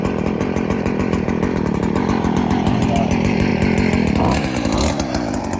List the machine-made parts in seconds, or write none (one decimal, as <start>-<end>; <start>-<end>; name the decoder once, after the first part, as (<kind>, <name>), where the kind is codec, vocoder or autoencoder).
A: 0.0-3.5 (vocoder, BigVGAN v2); 4.4-5.6